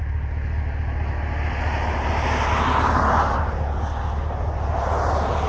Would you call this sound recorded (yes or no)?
yes